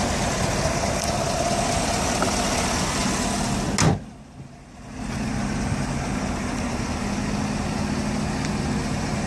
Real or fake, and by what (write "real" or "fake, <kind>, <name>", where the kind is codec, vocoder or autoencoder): real